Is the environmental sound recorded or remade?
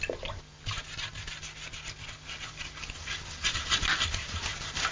recorded